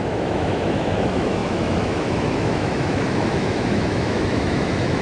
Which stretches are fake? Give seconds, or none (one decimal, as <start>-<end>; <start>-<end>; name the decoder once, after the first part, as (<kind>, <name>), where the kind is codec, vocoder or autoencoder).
0.0-5.0 (autoencoder, DAC-VAE)